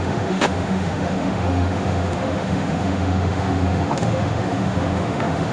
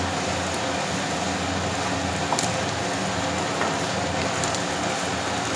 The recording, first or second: second